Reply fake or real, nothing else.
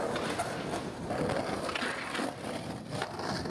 real